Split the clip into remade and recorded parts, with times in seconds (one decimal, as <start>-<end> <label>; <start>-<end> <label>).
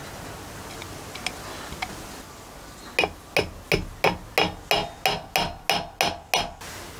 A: 0.0-7.0 recorded